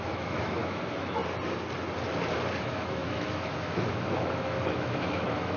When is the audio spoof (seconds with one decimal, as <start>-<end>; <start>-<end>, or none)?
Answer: 0.0-1.2; 2.6-5.6

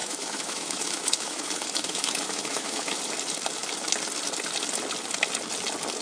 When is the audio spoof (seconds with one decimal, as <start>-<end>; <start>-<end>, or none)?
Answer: 0.0-3.0

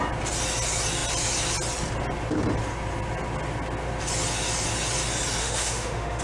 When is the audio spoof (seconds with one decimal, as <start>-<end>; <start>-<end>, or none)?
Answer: 5.4-6.2